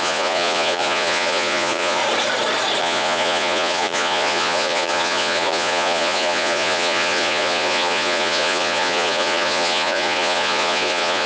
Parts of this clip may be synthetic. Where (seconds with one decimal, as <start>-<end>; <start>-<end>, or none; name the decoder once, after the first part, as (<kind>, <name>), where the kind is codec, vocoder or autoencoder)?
0.0-2.0 (vocoder, Vocos); 2.8-11.3